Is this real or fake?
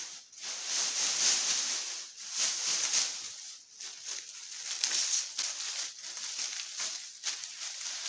real